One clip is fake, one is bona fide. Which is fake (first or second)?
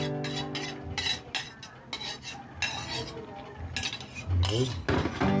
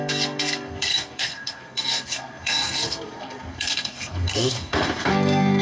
second